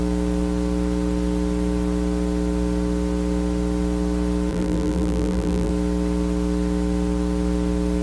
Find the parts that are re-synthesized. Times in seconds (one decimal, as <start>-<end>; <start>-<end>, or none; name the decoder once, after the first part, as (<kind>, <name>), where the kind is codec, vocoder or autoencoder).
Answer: 4.5-5.7 (vocoder, BigVGAN v2)